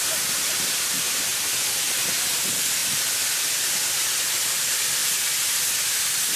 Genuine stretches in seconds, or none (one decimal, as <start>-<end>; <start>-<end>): 0.0-6.4